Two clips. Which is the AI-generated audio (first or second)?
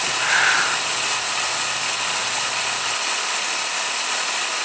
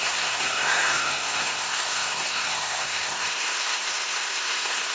second